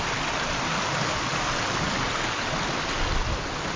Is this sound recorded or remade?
recorded